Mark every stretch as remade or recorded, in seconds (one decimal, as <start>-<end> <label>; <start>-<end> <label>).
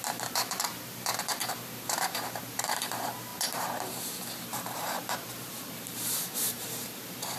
0.0-7.4 remade